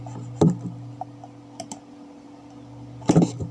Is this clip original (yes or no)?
yes